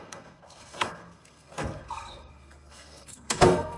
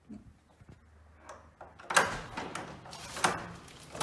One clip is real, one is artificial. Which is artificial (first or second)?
first